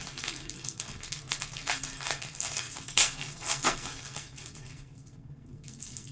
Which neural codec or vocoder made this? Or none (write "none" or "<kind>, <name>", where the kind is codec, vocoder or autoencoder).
codec, SNAC